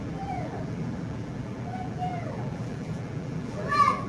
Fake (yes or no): yes